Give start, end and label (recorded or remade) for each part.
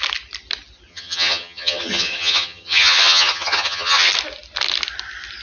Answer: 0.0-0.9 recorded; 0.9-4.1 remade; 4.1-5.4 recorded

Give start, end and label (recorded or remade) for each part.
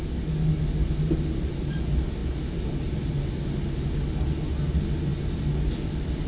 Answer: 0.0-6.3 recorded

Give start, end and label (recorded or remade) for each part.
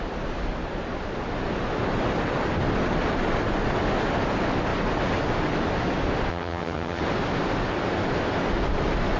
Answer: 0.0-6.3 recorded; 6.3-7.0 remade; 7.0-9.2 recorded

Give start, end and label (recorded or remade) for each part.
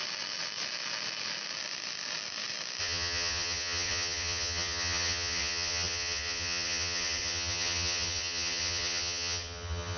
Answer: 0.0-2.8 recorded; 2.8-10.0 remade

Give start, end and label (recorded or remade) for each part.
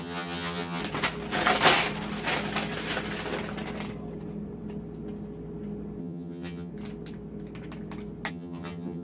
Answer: 0.0-0.8 remade; 0.8-6.0 recorded; 6.0-6.7 remade; 6.7-8.3 recorded; 8.3-9.0 remade